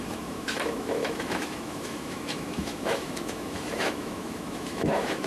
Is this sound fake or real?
fake